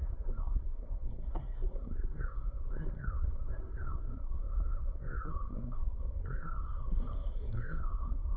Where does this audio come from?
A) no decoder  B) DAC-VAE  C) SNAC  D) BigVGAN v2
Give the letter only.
C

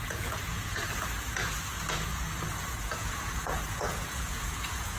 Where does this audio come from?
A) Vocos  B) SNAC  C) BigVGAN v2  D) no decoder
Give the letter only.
A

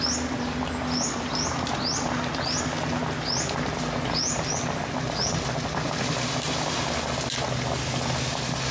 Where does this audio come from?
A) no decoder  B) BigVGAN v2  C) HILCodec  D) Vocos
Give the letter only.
A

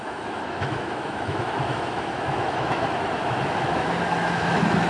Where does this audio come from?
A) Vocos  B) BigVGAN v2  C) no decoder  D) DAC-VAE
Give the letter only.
D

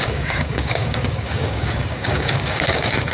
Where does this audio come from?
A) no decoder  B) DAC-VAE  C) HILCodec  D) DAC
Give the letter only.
D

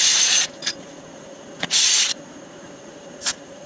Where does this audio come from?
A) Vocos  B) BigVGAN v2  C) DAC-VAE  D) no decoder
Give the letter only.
A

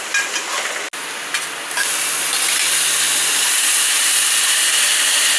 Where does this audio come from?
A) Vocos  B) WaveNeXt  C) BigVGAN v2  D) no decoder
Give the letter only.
D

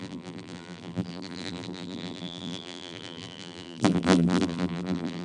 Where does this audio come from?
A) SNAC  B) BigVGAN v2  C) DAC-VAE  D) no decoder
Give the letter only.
B